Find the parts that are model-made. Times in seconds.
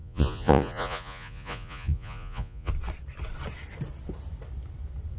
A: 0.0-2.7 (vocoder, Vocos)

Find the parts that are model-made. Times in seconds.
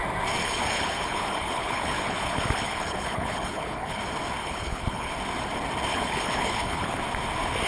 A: 0.4-4.0 (codec, HILCodec); 4.4-5.1; 5.9-7.0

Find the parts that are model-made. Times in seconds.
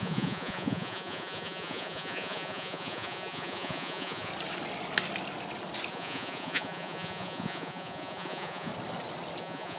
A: 0.0-4.3 (vocoder, Vocos); 5.9-8.7; 9.4-9.8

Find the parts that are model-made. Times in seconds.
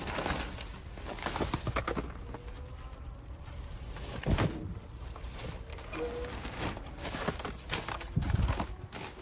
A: 5.7-6.6 (codec, DAC)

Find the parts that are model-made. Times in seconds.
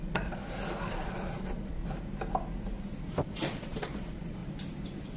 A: 0.0-0.4 (vocoder, Vocos); 0.9-1.8; 3.2-4.4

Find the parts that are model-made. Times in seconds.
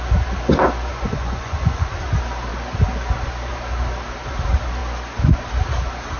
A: 0.9-1.9 (vocoder, Vocos)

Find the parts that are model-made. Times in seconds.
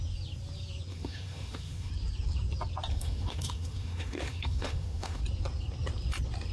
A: 0.9-1.9 (autoencoder, DAC-VAE); 2.9-5.2